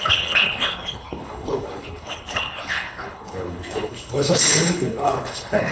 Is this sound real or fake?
fake